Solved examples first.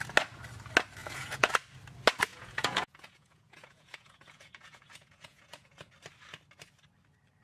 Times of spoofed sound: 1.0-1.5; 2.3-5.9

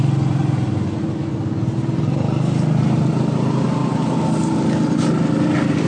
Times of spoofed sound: none

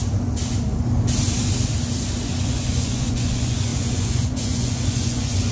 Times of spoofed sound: 2.4-5.5

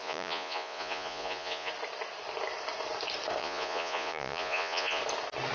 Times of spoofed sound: 0.0-1.7; 3.4-5.0

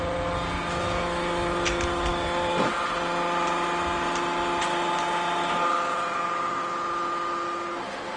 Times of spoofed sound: none

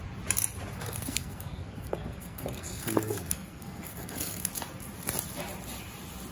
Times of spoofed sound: 0.7-4.5

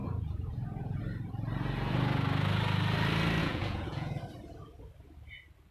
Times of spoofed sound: 0.0-1.0; 3.4-4.2